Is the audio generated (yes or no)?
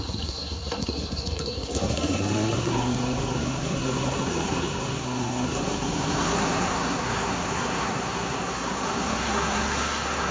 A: yes